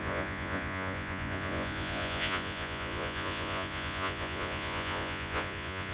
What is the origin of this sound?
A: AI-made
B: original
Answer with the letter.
A